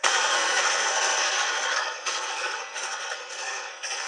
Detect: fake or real fake